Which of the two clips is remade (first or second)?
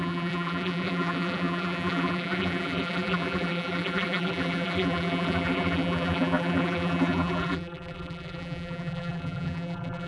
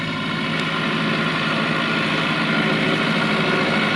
first